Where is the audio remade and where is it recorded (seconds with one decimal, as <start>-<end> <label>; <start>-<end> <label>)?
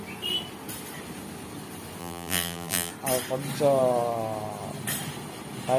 0.0-2.0 recorded; 2.0-2.9 remade; 2.9-5.8 recorded